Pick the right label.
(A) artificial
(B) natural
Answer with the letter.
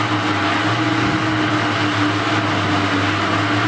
B